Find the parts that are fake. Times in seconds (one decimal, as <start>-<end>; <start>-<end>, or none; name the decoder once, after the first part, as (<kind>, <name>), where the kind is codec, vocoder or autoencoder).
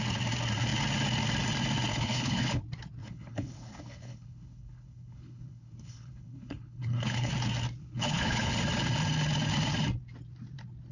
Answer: 1.9-2.6 (codec, HILCodec); 3.0-7.3; 7.8-8.5